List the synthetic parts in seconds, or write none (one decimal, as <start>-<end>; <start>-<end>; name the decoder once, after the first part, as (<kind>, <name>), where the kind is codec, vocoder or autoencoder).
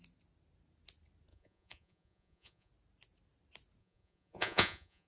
1.3-2.7 (vocoder, Vocos); 3.8-5.1